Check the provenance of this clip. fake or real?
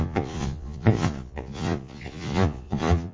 fake